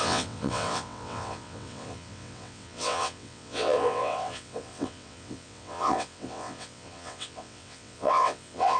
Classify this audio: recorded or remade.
remade